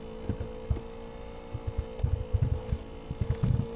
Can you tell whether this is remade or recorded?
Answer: recorded